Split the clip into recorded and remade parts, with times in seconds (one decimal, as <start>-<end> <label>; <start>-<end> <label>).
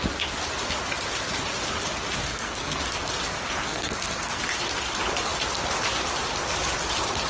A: 0.0-2.3 recorded; 2.3-2.8 remade; 2.8-3.3 recorded; 3.3-4.4 remade; 4.4-7.3 recorded